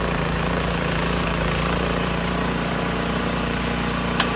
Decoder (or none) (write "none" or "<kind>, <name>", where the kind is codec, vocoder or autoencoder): vocoder, BigVGAN v2